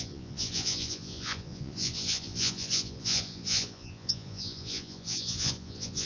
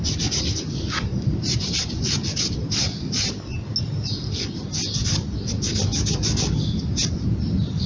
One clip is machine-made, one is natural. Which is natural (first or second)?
second